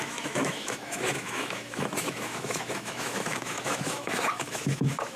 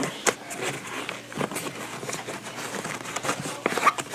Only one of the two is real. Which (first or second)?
second